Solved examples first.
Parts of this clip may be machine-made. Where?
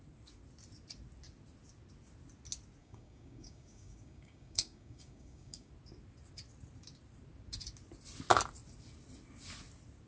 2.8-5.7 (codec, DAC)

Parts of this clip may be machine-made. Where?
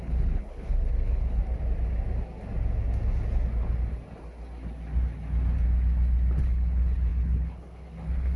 0.0-1.4 (codec, HILCodec); 6.4-8.4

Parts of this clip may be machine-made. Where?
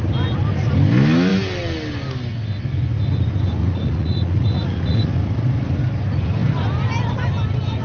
3.6-5.1 (vocoder, Vocos)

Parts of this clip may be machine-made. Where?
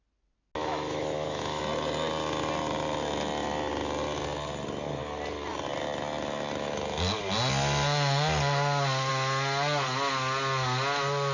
0.6-1.6 (autoencoder, DAC-VAE)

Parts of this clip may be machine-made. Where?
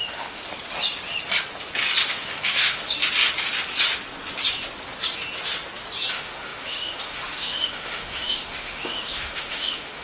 0.0-0.4 (autoencoder, DAC-VAE); 2.1-2.8; 6.1-10.0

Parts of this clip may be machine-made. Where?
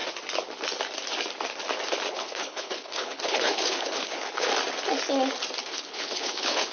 2.1-4.5 (codec, HILCodec); 5.6-6.7